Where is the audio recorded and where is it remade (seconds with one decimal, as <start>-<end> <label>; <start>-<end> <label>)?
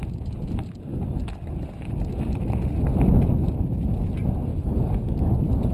0.0-4.5 recorded; 4.5-5.3 remade; 5.3-5.7 recorded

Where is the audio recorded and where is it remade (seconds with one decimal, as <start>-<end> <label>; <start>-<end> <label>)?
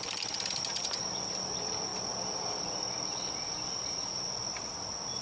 0.0-5.2 recorded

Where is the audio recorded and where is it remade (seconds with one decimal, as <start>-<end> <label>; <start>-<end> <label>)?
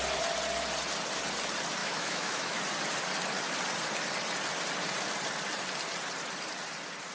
0.0-1.8 recorded; 1.8-2.6 remade; 2.6-7.1 recorded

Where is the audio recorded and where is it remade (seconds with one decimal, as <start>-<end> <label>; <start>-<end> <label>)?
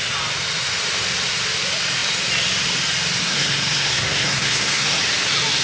0.0-3.2 recorded; 3.2-5.0 remade; 5.0-5.6 recorded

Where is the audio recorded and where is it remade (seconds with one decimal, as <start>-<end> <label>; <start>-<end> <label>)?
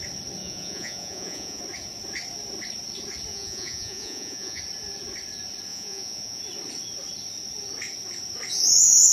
0.0-0.4 recorded; 0.4-1.6 remade; 1.6-3.3 recorded; 3.3-4.6 remade; 4.6-5.7 recorded; 5.7-6.4 remade; 6.4-9.1 recorded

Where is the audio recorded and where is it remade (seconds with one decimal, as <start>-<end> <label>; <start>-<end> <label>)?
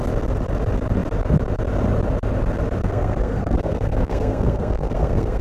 0.0-2.8 recorded; 2.8-5.4 remade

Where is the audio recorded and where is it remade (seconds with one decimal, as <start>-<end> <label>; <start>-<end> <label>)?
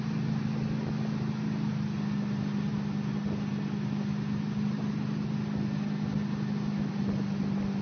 0.0-7.8 recorded